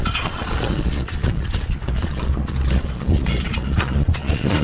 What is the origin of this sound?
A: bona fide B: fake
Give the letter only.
B